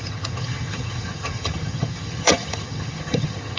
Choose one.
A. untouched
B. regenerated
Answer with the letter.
B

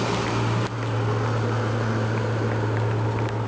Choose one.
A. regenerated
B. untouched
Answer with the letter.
B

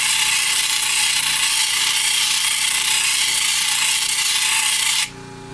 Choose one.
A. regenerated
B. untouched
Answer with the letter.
B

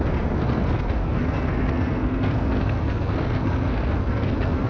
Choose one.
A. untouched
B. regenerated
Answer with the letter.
B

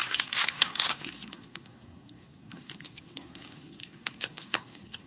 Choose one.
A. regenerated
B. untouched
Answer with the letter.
A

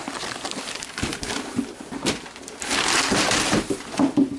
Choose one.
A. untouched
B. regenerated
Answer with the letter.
A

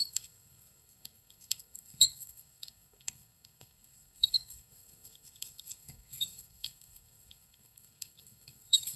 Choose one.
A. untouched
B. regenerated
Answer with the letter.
B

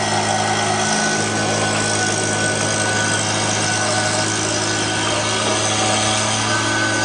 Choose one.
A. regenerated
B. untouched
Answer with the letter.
B